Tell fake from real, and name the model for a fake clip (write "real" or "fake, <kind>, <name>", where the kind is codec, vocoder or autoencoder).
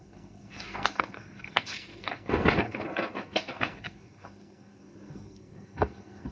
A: fake, codec, SNAC